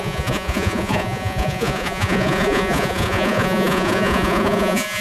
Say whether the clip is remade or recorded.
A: remade